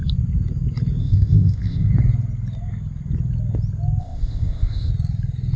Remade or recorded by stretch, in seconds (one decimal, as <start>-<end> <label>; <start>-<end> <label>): 0.0-1.0 recorded; 1.0-1.9 remade; 1.9-4.0 recorded; 4.0-4.9 remade; 4.9-5.6 recorded